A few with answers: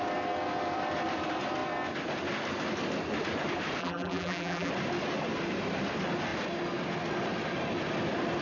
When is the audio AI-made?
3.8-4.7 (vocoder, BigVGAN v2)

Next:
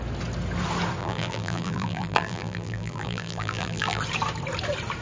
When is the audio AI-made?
1.0-4.0 (vocoder, BigVGAN v2)

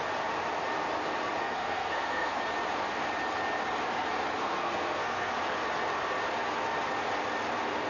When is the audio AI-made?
1.4-2.4 (codec, SNAC); 4.4-5.3

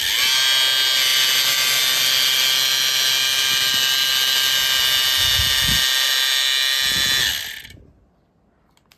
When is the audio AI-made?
none